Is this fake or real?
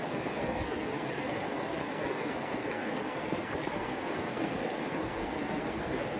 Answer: fake